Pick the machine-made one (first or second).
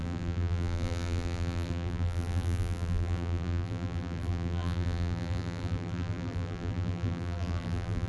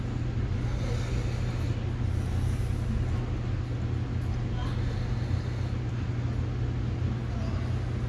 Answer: first